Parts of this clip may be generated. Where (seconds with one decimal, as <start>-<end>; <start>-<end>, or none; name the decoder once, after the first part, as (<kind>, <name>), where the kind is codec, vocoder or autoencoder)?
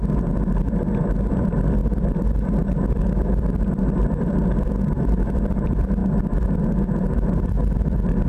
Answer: 1.3-8.3 (vocoder, BigVGAN v2)